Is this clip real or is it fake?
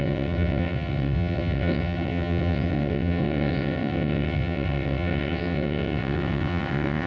fake